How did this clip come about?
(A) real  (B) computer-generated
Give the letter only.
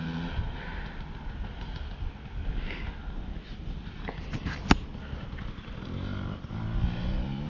A